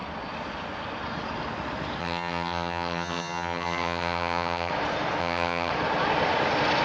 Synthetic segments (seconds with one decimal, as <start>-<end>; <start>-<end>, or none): 2.0-4.7; 5.2-5.7